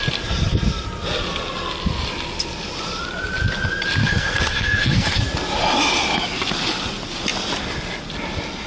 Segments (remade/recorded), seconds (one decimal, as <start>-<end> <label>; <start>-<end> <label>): 0.0-4.0 recorded; 4.0-5.2 remade; 5.2-8.7 recorded